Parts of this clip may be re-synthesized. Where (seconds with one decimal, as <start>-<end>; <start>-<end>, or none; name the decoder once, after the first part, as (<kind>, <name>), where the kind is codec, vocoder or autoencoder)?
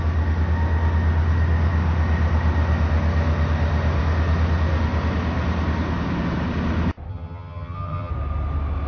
7.1-8.1 (vocoder, HiFi-GAN)